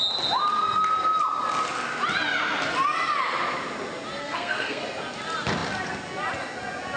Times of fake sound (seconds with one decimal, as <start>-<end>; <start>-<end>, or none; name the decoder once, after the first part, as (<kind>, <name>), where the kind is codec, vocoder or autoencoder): 4.2-4.8 (codec, SNAC)